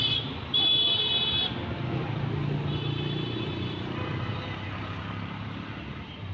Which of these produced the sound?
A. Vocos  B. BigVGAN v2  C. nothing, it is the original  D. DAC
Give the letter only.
C